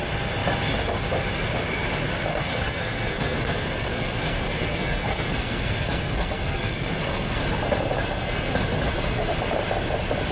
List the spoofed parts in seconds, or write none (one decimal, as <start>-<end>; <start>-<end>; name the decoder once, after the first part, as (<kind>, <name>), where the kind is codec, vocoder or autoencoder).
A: 2.3-7.4 (codec, SNAC)